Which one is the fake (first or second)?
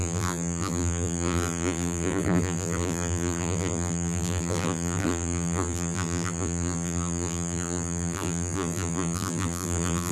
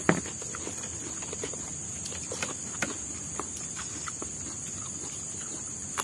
first